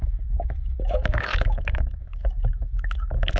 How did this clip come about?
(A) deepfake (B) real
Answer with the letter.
A